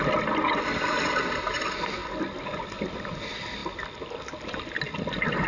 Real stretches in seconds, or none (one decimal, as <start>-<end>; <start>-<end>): 0.0-5.5